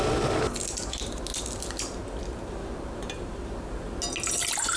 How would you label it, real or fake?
real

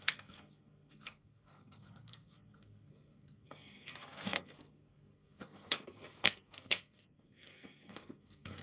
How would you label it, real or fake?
fake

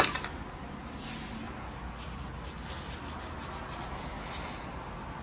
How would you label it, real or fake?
real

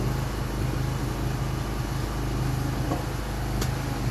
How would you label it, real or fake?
real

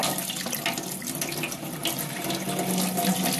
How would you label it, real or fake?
real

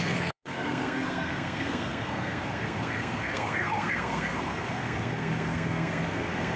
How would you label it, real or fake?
fake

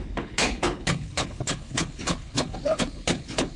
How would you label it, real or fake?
fake